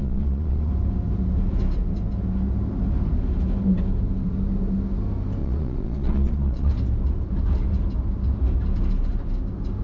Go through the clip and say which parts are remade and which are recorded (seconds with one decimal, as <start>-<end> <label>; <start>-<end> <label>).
0.0-0.7 remade; 0.7-5.4 recorded; 5.4-6.7 remade; 6.7-9.8 recorded